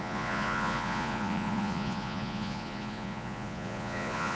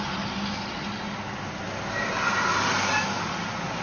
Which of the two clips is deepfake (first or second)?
first